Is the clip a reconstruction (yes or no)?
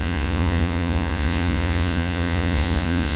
yes